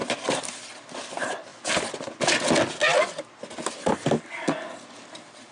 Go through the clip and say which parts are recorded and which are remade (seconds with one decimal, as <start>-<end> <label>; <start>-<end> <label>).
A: 0.0-5.5 recorded